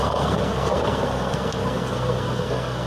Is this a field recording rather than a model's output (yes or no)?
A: no